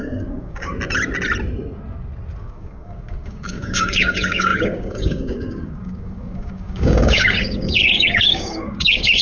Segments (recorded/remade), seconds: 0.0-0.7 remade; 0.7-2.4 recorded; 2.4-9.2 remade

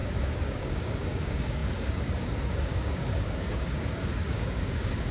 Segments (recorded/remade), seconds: 0.0-5.1 remade

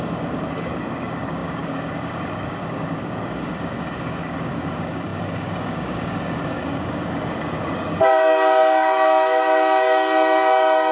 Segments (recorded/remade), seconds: 0.0-10.9 remade

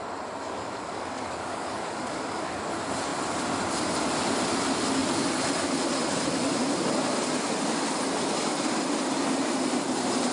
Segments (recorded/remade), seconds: 0.0-0.4 recorded; 0.4-2.6 remade; 2.6-10.3 recorded

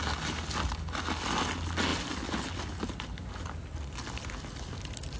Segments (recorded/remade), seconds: 0.0-5.2 recorded